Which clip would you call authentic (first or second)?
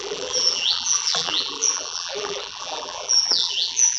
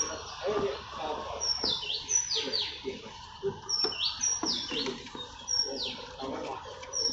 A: second